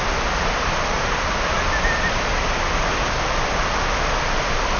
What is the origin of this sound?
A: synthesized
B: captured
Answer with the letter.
B